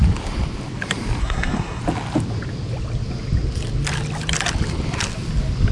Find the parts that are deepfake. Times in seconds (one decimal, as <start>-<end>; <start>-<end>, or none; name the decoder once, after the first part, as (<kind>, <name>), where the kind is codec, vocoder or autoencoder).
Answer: 1.2-1.8 (codec, SNAC)